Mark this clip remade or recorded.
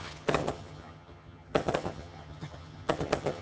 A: remade